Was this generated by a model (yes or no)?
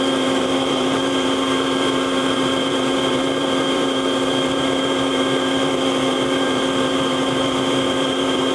yes